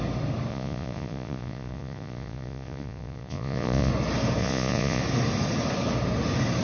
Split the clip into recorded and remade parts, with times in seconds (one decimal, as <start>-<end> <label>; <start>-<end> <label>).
0.0-0.5 recorded; 0.5-3.9 remade; 3.9-4.4 recorded; 4.4-5.0 remade; 5.0-6.6 recorded